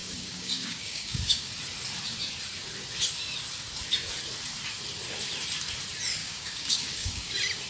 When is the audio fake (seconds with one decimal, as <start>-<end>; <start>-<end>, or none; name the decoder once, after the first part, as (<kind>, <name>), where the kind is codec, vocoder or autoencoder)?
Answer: 0.0-1.5 (codec, DAC); 6.2-7.3